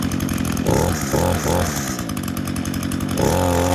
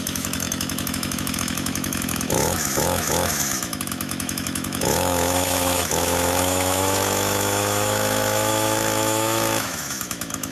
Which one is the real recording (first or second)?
first